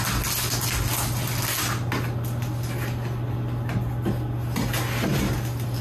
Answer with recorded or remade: recorded